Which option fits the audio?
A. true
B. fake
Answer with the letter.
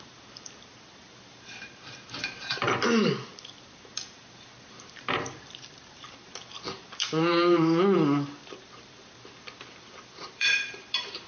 B